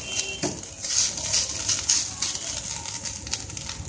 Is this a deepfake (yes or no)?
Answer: no